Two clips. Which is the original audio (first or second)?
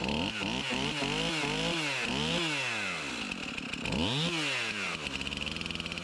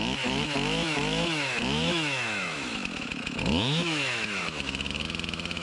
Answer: first